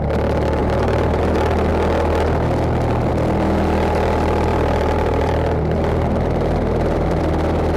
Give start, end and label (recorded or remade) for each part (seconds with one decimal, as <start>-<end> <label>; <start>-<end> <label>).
0.0-0.6 recorded; 0.6-1.2 remade; 1.2-4.5 recorded; 4.5-7.2 remade; 7.2-7.8 recorded